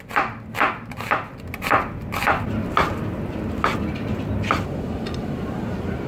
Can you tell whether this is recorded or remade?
recorded